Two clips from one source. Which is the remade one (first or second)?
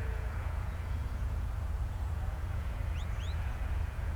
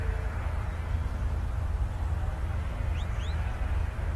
first